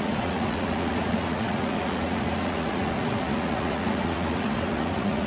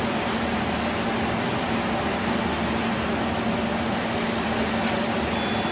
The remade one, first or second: first